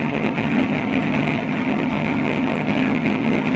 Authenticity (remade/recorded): remade